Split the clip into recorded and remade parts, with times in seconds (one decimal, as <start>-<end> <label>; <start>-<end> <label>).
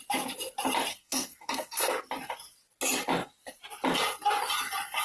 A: 0.0-0.9 recorded; 0.9-1.9 remade; 1.9-5.0 recorded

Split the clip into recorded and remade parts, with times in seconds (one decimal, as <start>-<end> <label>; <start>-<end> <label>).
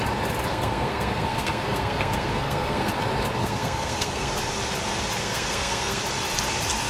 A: 0.0-0.5 recorded; 0.5-2.9 remade; 2.9-3.4 recorded; 3.4-4.3 remade; 4.3-5.2 recorded; 5.2-6.0 remade; 6.0-6.9 recorded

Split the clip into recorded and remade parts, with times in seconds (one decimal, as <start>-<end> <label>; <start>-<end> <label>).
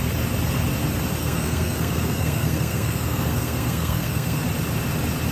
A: 0.0-1.2 recorded; 1.2-4.4 remade; 4.4-5.3 recorded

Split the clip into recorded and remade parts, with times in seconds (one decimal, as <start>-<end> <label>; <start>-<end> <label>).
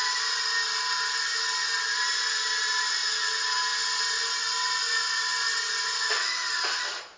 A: 0.0-7.2 recorded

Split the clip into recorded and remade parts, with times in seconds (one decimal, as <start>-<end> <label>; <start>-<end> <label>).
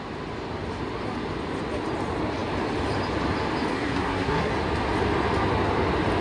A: 0.0-3.7 recorded; 3.7-4.5 remade; 4.5-6.2 recorded